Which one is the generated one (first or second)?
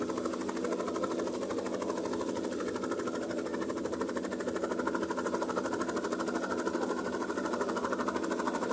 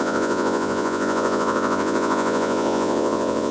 second